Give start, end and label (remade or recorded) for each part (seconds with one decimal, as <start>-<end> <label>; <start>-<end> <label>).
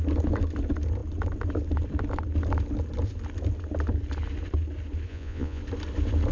0.0-5.1 recorded; 5.1-5.6 remade; 5.6-6.3 recorded